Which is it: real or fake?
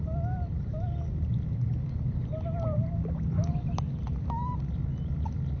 real